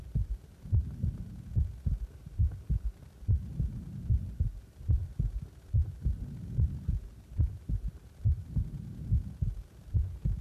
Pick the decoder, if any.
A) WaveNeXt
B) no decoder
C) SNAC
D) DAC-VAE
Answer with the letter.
B